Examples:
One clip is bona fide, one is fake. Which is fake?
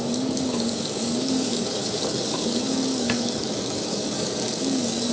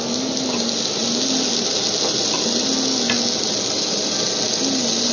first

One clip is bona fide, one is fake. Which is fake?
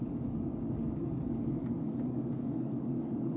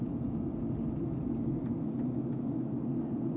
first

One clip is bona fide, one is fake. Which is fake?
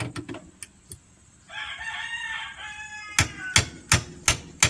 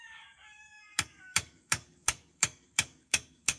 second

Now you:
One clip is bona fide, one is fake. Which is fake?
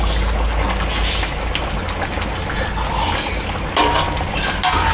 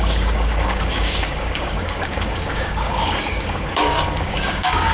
second